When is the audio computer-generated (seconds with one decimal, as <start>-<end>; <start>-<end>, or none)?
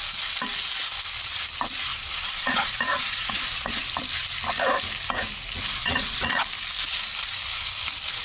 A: 1.9-3.8; 5.8-6.4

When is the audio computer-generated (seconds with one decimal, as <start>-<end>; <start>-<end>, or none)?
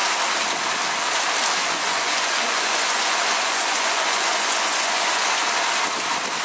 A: 1.6-5.4